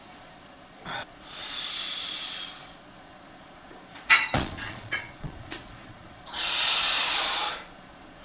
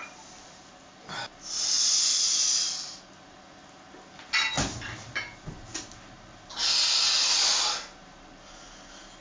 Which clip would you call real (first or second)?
second